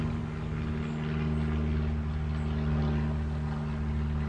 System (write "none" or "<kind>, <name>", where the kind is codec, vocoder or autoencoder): none